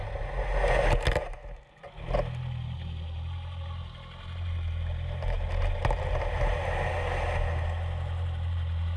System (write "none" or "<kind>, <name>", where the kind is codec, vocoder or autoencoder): none